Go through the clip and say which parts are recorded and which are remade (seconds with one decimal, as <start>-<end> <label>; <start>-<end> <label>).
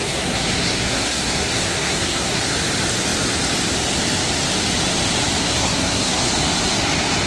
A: 0.0-2.4 remade; 2.4-5.4 recorded; 5.4-6.3 remade; 6.3-7.3 recorded